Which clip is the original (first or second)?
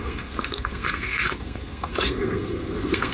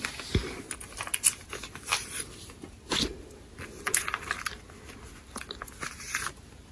second